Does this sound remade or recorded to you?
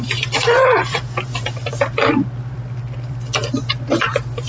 remade